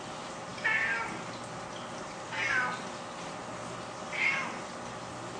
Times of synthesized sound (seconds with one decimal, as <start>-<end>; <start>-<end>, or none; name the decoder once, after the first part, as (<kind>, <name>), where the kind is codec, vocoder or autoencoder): none